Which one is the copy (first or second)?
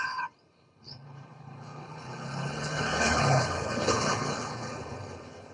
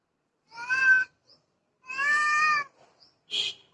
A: first